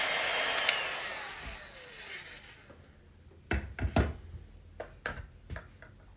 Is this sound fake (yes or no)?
no